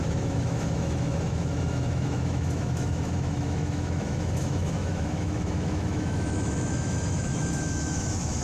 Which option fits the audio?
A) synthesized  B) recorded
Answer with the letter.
A